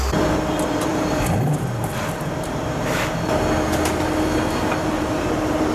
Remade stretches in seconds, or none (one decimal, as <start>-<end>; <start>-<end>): 0.9-3.3; 4.8-5.7